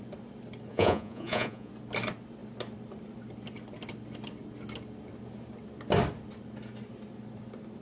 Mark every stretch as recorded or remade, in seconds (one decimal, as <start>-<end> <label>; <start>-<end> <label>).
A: 0.0-0.7 recorded; 0.7-1.7 remade; 1.7-7.8 recorded